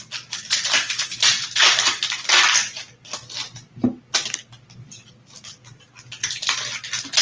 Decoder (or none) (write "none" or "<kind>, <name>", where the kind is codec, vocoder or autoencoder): none